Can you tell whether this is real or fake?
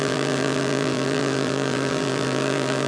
fake